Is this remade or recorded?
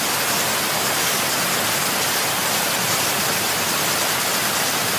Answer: recorded